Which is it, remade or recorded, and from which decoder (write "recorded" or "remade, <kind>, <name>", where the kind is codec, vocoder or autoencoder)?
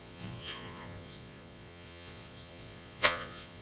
remade, vocoder, Vocos